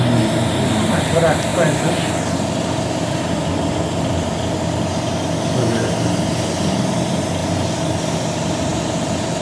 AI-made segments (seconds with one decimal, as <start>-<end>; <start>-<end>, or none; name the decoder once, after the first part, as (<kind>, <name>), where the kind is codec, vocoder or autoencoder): 1.5-6.7 (vocoder, BigVGAN v2); 7.4-8.0